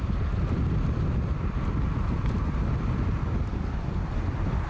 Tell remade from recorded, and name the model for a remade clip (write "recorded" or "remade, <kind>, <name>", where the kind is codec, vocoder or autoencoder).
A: recorded